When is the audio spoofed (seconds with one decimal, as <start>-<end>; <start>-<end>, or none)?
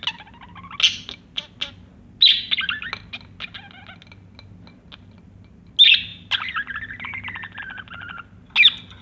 none